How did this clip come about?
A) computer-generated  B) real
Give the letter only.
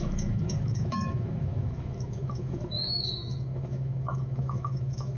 A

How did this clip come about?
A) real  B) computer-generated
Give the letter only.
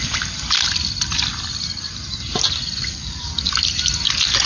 A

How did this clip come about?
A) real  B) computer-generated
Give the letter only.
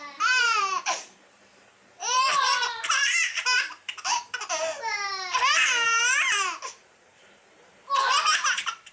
B